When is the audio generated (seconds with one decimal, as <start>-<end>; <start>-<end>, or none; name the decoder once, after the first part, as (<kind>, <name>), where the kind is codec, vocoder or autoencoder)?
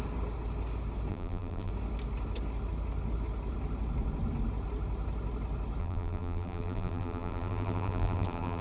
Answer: 1.1-1.7 (vocoder, BigVGAN v2); 5.8-8.6